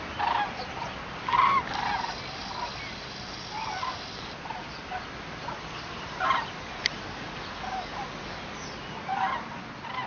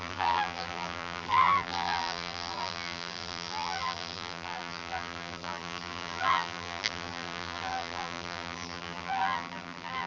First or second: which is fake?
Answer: second